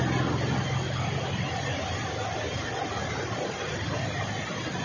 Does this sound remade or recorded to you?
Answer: recorded